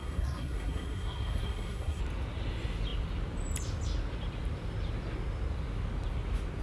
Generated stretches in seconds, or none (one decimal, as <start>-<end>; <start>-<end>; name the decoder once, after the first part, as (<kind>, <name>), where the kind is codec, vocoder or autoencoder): 0.0-2.0 (codec, SNAC)